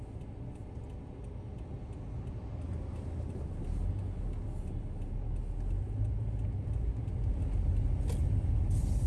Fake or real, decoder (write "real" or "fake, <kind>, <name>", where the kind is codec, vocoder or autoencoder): real